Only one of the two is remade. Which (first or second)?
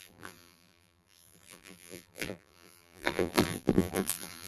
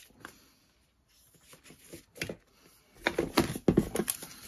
first